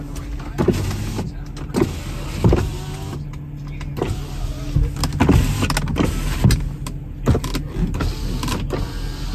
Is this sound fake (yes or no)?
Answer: no